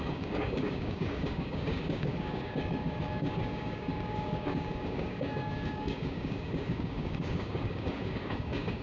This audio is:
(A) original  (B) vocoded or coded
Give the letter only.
B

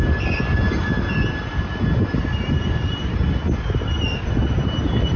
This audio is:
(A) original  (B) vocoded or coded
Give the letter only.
A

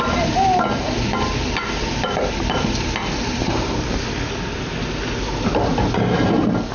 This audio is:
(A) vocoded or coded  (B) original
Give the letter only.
B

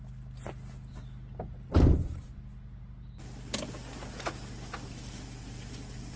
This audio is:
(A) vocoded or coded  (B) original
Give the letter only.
B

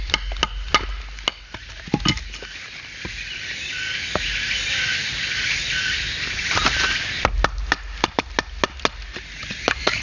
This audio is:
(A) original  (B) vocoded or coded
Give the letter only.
A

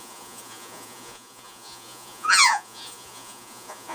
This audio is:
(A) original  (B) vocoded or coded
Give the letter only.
B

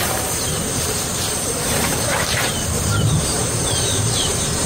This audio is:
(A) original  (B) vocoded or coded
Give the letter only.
B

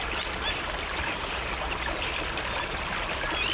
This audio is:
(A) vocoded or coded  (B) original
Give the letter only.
B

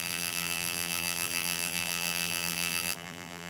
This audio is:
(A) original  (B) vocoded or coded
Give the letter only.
B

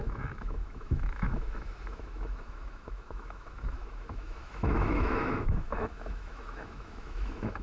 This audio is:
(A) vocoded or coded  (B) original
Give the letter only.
A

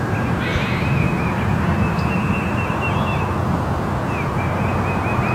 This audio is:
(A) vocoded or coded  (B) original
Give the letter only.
B